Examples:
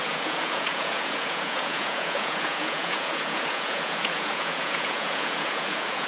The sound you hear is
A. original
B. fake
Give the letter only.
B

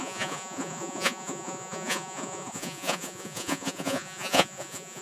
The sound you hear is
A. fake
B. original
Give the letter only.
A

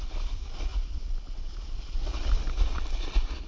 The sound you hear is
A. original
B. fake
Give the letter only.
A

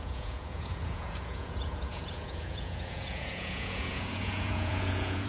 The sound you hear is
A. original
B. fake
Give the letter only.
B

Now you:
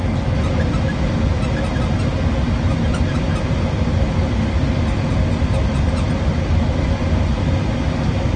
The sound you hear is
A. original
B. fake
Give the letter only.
A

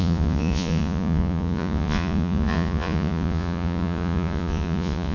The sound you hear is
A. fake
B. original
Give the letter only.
A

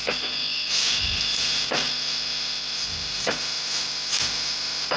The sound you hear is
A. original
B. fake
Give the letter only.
A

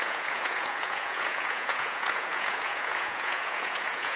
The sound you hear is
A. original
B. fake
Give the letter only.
B